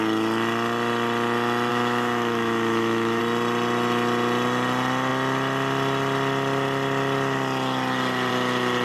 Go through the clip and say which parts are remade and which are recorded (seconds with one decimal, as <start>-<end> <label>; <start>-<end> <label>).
0.0-1.7 recorded; 1.7-3.2 remade; 3.2-8.8 recorded